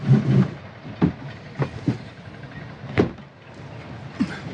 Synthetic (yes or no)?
no